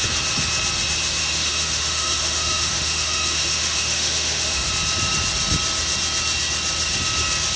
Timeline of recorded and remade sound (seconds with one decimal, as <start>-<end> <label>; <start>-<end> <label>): 0.0-1.2 recorded; 1.2-4.7 remade; 4.7-7.6 recorded